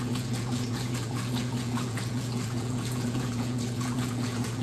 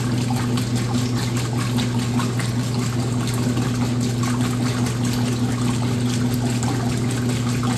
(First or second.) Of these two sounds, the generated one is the first